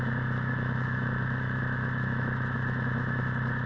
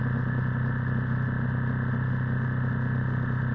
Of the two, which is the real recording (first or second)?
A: second